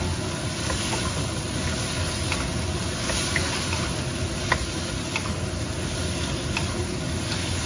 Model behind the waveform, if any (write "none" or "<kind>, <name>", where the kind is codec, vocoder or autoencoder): none